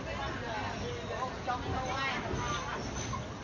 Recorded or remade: recorded